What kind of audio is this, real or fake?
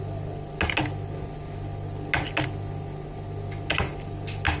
real